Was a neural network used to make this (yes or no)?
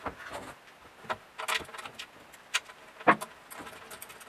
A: no